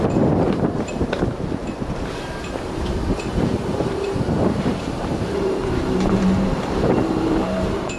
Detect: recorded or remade remade